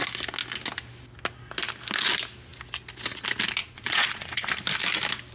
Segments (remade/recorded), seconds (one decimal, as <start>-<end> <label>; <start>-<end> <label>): 0.0-3.6 recorded; 3.6-4.5 remade; 4.5-5.3 recorded